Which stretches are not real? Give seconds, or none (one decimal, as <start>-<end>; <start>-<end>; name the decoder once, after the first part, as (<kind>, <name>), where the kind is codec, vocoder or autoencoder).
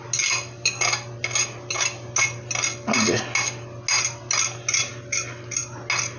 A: none